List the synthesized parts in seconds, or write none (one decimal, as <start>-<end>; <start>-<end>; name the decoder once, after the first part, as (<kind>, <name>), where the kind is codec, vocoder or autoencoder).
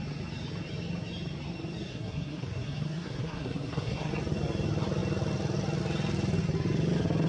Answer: 1.9-4.1 (codec, SNAC)